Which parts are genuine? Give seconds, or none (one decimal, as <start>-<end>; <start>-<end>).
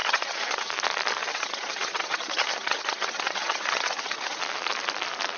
0.7-1.2; 4.4-5.4